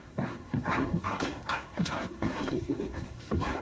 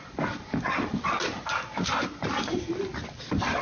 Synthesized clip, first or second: first